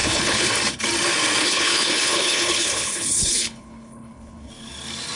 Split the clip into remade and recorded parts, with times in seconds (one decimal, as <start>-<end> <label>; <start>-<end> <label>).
0.0-0.5 remade; 0.5-1.4 recorded; 1.4-4.5 remade; 4.5-5.2 recorded